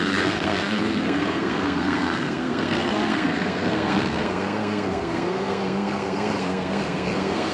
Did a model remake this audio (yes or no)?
yes